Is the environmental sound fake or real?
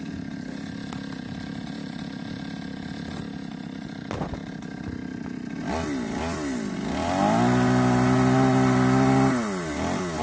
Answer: real